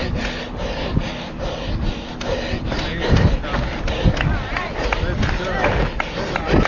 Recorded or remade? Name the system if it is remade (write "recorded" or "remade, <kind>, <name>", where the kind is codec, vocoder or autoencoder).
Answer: recorded